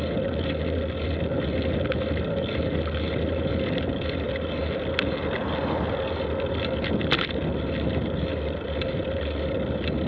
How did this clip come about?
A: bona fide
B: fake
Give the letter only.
A